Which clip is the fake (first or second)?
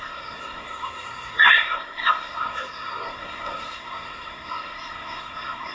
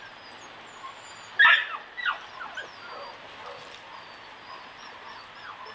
first